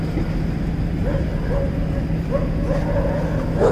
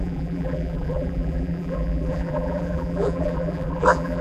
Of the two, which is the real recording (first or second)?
first